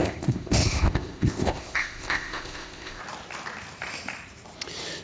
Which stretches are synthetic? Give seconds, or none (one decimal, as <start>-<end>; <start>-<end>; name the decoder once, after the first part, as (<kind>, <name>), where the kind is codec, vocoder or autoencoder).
0.0-3.0 (codec, ZipCodec)